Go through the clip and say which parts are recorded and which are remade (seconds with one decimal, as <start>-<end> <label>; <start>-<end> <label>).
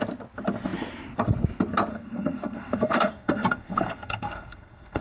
0.0-1.9 recorded; 1.9-5.0 remade